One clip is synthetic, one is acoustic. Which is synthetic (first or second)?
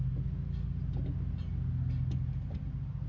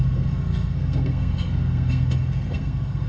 second